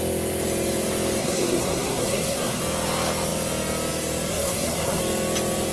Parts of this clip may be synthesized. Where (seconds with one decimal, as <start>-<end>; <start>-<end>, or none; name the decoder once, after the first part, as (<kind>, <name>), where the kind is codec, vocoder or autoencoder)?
1.2-2.6 (codec, SNAC); 4.3-5.0